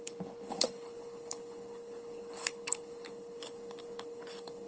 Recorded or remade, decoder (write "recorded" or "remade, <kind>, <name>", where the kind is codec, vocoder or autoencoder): remade, codec, HILCodec